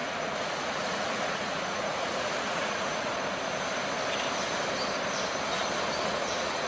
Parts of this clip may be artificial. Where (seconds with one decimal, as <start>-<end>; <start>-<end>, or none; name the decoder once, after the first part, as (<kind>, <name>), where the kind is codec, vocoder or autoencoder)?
0.0-3.1 (vocoder, Vocos); 6.0-6.7